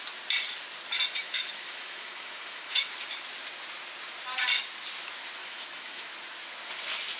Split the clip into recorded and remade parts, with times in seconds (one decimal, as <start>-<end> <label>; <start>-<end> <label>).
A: 0.0-1.2 recorded; 1.2-2.9 remade; 2.9-5.4 recorded; 5.4-6.1 remade; 6.1-7.2 recorded